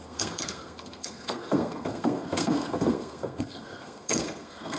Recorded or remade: remade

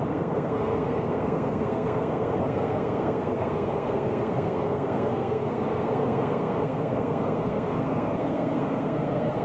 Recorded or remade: remade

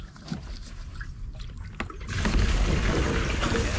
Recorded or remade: recorded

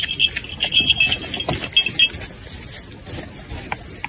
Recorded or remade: recorded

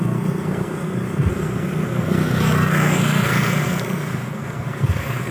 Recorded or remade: remade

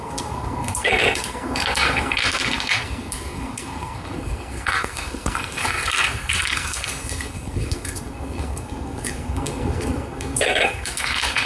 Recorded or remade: remade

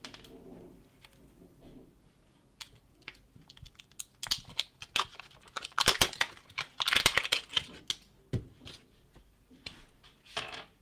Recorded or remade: recorded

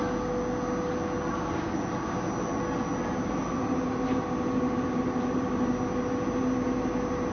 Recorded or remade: recorded